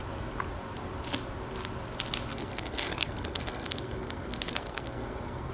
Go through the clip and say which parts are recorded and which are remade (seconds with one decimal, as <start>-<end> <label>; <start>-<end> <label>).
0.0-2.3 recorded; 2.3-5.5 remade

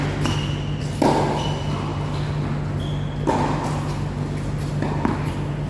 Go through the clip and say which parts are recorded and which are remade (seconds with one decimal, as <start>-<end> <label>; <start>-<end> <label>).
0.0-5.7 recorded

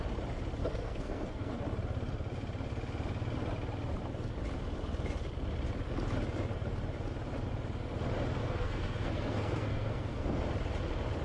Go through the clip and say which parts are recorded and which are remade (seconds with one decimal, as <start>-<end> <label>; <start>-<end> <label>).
0.0-0.6 recorded; 0.6-1.5 remade; 1.5-8.4 recorded; 8.4-10.4 remade; 10.4-11.2 recorded